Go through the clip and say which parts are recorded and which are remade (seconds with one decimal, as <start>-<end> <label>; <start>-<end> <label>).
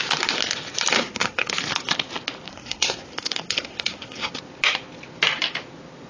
0.0-1.0 recorded; 1.0-1.5 remade; 1.5-2.5 recorded; 2.5-4.3 remade; 4.3-6.1 recorded